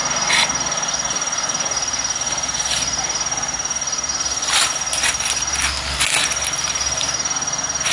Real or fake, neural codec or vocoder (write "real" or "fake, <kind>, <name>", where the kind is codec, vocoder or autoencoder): real